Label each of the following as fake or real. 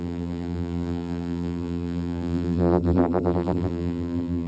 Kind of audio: fake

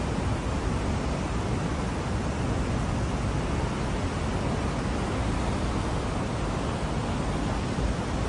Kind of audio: real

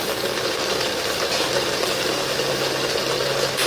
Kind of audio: fake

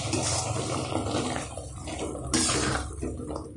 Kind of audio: fake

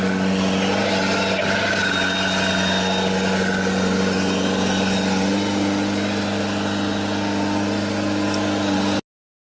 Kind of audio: real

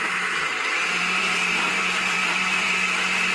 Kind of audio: fake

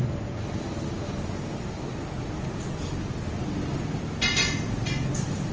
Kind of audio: real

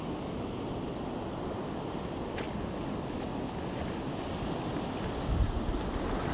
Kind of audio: real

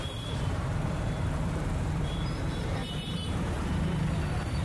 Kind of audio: fake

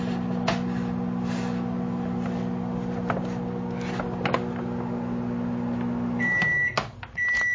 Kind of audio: real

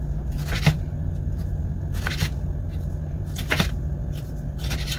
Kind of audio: real